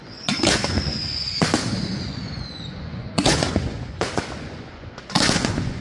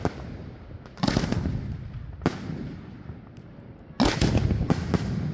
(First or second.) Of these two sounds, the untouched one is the second